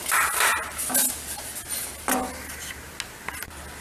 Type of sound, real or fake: real